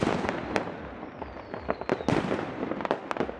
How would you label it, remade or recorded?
recorded